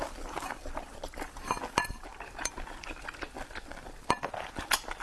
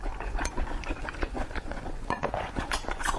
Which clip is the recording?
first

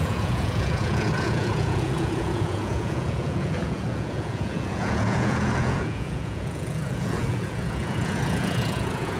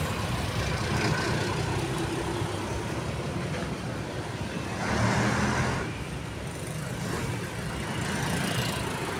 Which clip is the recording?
second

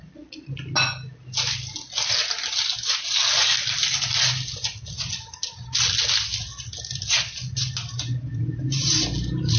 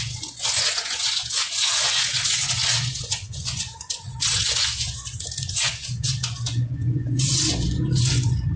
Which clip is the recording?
first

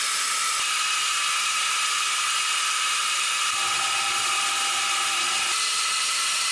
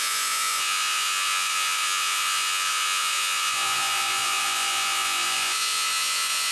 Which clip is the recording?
first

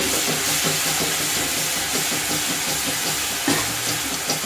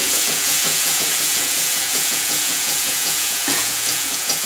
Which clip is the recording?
first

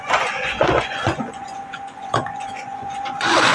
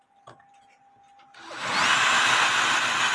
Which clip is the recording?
second